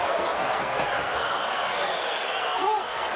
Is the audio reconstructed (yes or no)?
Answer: yes